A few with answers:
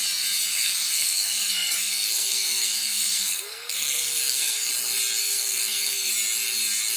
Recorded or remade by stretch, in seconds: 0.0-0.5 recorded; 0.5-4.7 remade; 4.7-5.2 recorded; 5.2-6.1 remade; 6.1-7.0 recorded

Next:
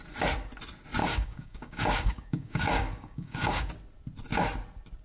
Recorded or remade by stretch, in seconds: 0.0-1.0 recorded; 1.0-3.7 remade; 3.7-5.0 recorded

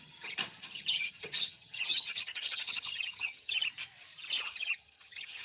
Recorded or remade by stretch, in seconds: 0.0-3.6 remade; 3.6-4.4 recorded; 4.4-5.4 remade

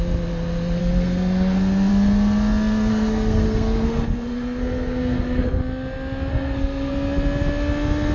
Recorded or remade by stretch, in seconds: 0.0-0.8 recorded; 0.8-1.9 remade; 1.9-2.9 recorded; 2.9-5.6 remade; 5.6-6.3 recorded; 6.3-6.9 remade; 6.9-8.1 recorded

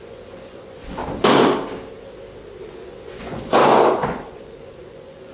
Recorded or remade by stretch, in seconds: 0.0-1.0 remade; 1.0-2.6 recorded; 2.6-5.3 remade